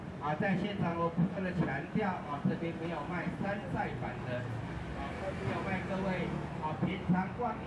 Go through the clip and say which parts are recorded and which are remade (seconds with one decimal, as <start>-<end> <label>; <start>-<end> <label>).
0.0-6.9 recorded; 6.9-7.7 remade